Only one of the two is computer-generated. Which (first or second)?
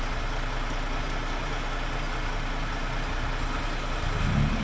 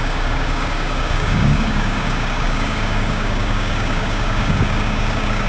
second